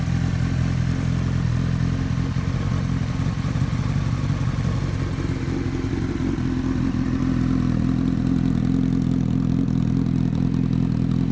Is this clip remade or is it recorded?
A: remade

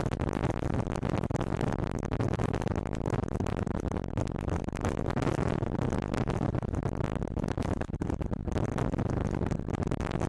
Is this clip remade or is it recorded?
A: recorded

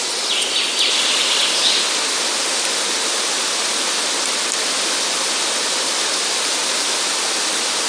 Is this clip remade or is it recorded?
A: recorded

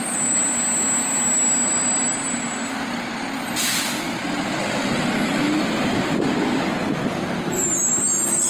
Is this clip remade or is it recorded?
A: recorded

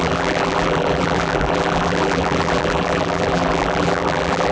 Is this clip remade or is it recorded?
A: remade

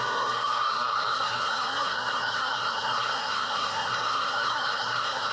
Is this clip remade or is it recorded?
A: remade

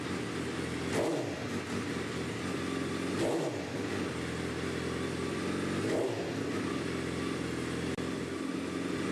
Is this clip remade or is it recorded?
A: recorded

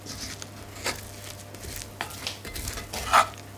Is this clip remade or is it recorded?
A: recorded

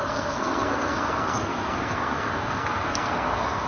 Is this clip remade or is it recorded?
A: remade